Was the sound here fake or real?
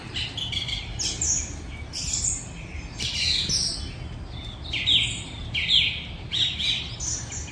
real